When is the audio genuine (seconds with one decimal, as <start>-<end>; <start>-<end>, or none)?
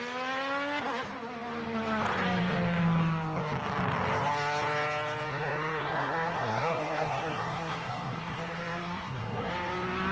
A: 0.0-5.3; 9.5-10.1